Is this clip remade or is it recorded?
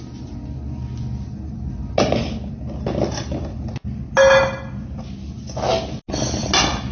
recorded